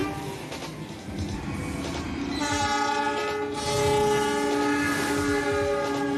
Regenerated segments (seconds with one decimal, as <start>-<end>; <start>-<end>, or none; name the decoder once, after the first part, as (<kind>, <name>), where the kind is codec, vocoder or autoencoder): none